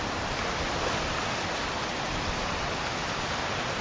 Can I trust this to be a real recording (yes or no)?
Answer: yes